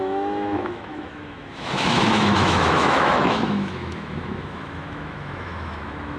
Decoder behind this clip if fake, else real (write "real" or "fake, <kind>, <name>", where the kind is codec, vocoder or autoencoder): fake, autoencoder, DAC-VAE